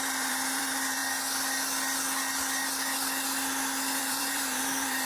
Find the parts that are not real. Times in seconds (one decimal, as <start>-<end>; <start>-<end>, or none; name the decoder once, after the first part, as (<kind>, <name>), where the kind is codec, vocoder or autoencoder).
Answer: 0.0-1.0 (vocoder, BigVGAN v2); 4.0-5.0